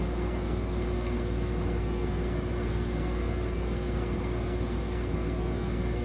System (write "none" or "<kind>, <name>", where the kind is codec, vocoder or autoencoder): codec, SNAC